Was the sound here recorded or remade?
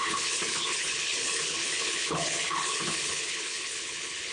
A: remade